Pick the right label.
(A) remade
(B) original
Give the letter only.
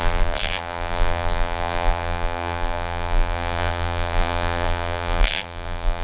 A